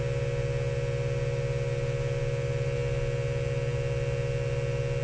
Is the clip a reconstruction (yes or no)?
no